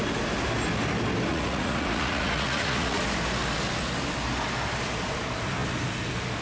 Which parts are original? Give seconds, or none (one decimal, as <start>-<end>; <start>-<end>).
0.0-1.3; 3.0-6.4